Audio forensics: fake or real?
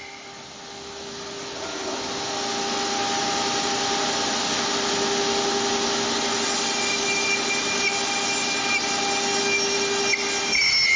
real